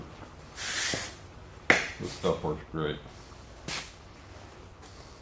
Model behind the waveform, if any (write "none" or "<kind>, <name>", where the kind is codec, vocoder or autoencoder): none